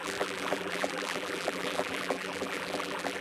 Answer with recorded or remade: remade